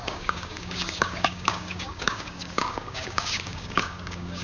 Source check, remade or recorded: remade